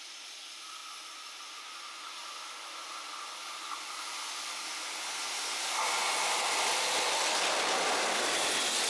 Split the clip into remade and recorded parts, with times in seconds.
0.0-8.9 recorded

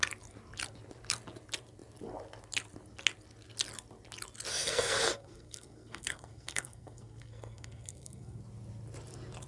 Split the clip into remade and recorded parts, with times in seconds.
0.0-4.5 recorded; 4.5-8.4 remade; 8.4-9.5 recorded

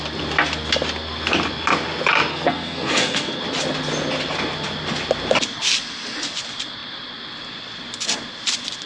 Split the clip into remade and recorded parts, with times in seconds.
0.0-2.3 recorded; 2.3-3.4 remade; 3.4-8.9 recorded

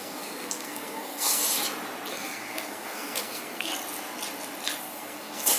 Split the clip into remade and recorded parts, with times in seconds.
0.0-1.4 remade; 1.4-2.1 recorded; 2.1-3.7 remade; 3.7-4.8 recorded; 4.8-5.6 remade